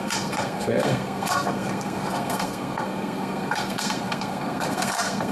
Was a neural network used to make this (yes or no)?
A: yes